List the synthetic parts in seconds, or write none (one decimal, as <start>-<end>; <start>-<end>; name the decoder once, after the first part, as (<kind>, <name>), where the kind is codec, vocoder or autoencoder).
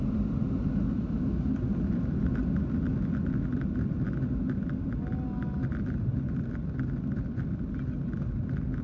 none